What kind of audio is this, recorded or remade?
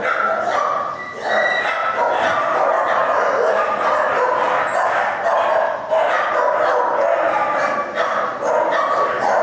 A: recorded